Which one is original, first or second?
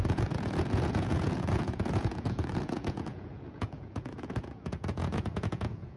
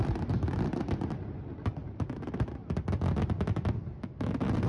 second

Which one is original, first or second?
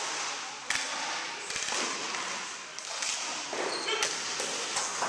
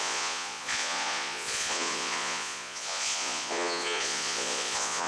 first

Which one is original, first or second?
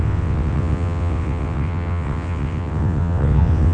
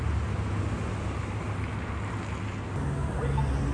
second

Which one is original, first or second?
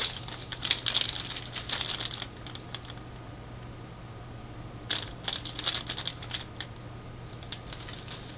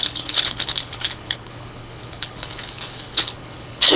first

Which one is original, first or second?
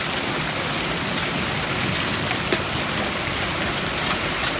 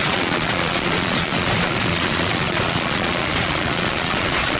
first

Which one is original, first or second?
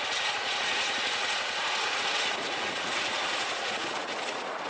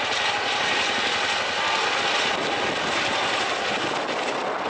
second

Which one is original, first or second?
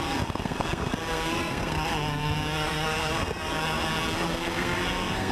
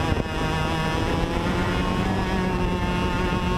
second